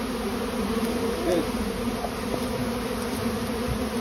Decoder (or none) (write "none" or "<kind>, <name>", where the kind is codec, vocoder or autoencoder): none